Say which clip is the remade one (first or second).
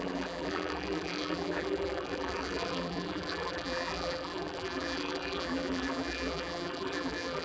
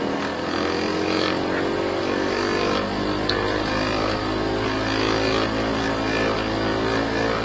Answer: first